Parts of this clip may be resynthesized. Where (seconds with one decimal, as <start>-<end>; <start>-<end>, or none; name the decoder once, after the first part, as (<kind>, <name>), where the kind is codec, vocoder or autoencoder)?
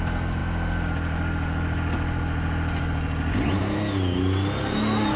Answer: none